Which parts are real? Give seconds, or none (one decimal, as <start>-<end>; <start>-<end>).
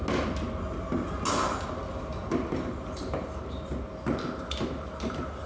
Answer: 0.0-2.1